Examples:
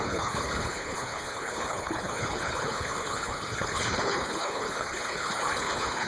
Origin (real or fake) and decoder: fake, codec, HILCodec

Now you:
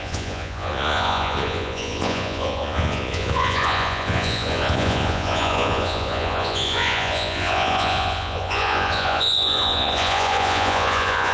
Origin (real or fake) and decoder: fake, vocoder, Vocos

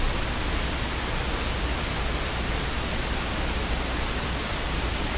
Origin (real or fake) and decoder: real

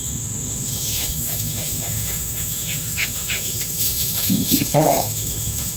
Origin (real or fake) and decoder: fake, autoencoder, DAC-VAE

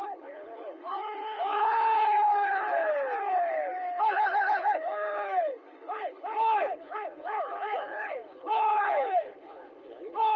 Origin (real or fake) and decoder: fake, codec, HILCodec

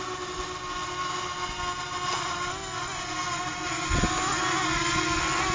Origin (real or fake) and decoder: real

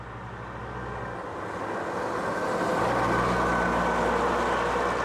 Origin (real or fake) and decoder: real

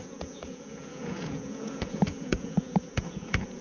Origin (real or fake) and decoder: fake, vocoder, Vocos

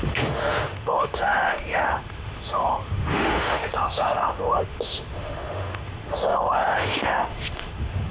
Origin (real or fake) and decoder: fake, autoencoder, DAC-VAE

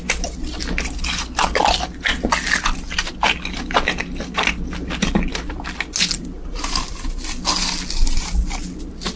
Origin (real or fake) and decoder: real